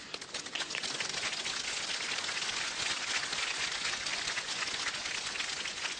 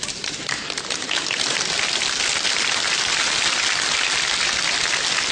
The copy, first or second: first